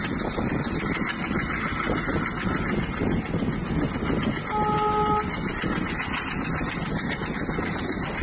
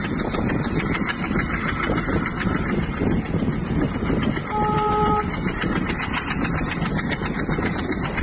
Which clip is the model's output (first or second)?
second